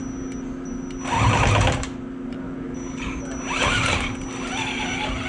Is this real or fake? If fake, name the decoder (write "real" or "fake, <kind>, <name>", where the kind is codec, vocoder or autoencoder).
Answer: real